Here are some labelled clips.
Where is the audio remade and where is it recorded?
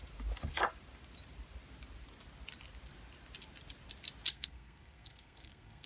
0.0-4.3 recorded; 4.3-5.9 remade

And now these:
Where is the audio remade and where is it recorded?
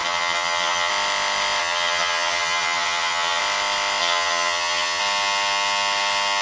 0.0-0.9 remade; 0.9-1.6 recorded; 1.6-3.4 remade; 3.4-4.0 recorded; 4.0-5.0 remade; 5.0-6.4 recorded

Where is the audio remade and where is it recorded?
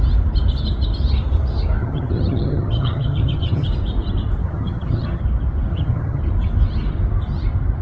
0.0-1.8 recorded; 1.8-3.7 remade; 3.7-4.4 recorded; 4.4-5.2 remade; 5.2-5.7 recorded; 5.7-6.2 remade; 6.2-7.8 recorded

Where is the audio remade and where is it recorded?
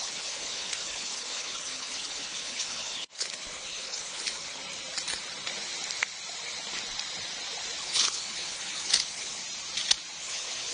0.0-4.6 remade; 4.6-7.8 recorded; 7.8-9.4 remade; 9.4-10.2 recorded; 10.2-10.7 remade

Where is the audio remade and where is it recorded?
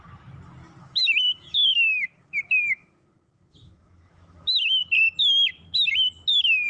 0.0-0.8 recorded; 0.8-4.8 remade; 4.8-6.7 recorded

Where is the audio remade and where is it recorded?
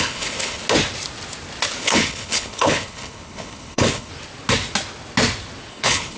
0.0-0.6 remade; 0.6-1.8 recorded; 1.8-4.1 remade; 4.1-5.7 recorded; 5.7-6.2 remade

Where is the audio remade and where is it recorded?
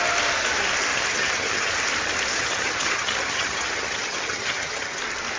0.0-0.9 recorded; 0.9-1.7 remade; 1.7-2.3 recorded; 2.3-5.0 remade; 5.0-5.4 recorded